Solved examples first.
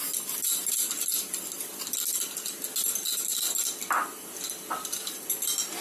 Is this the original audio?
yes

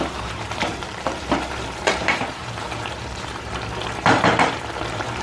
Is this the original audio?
no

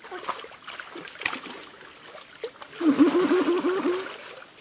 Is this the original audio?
yes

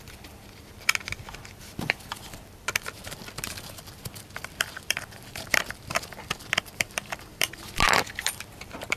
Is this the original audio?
no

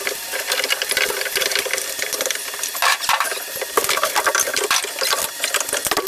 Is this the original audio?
yes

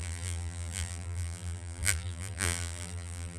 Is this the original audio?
no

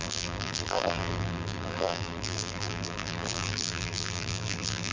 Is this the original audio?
no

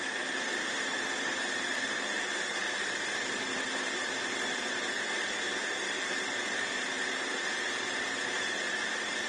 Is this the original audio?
no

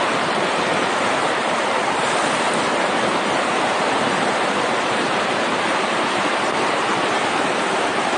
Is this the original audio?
no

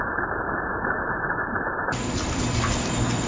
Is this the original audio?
no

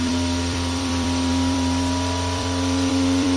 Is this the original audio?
no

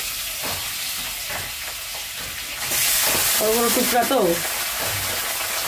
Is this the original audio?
yes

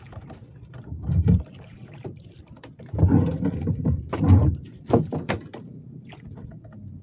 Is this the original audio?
no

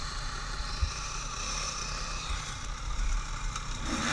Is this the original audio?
no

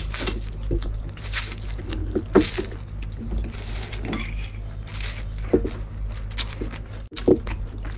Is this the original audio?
yes